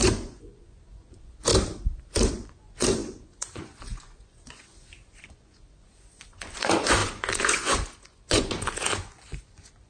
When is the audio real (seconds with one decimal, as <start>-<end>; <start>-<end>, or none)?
1.5-2.3